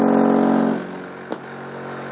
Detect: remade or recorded recorded